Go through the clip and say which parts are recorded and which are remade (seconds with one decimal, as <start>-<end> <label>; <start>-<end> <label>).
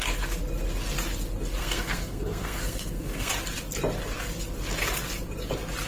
0.0-1.6 recorded; 1.6-3.3 remade; 3.3-5.9 recorded